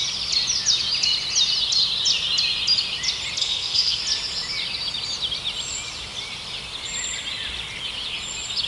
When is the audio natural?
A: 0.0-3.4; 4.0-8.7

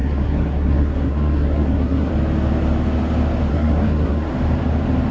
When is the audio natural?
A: 2.1-3.5; 4.3-5.1

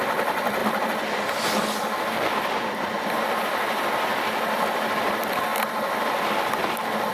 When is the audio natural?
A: 0.0-7.1

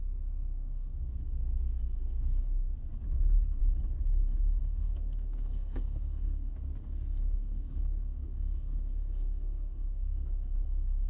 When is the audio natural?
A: 3.6-4.6

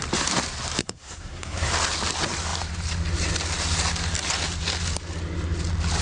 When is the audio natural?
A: 0.0-0.8; 1.7-6.0

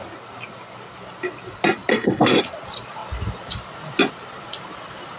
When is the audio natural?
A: 0.0-1.9; 2.4-5.2

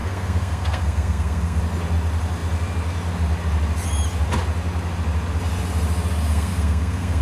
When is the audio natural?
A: 1.6-6.3

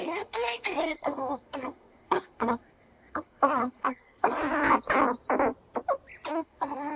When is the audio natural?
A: 4.4-6.3